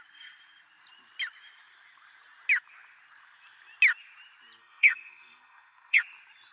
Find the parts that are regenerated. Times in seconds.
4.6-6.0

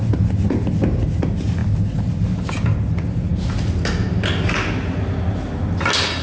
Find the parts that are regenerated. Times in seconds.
none

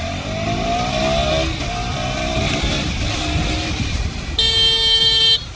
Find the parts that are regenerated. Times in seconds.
none

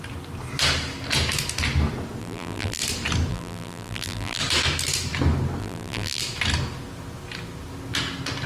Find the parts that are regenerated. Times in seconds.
2.2-2.8; 3.3-4.4; 5.6-6.2

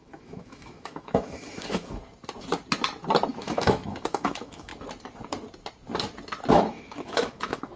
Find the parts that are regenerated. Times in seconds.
0.0-2.0; 3.3-4.7; 6.5-7.8

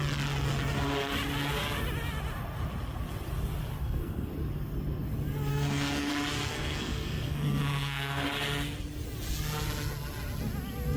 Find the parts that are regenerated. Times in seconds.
3.8-4.3; 5.5-6.1; 6.5-8.3